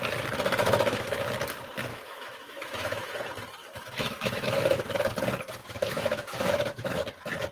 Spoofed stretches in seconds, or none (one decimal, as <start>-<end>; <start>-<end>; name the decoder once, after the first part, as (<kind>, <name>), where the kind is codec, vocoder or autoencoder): 0.6-1.3 (autoencoder, DAC-VAE); 1.9-3.1; 3.6-5.1; 5.6-7.0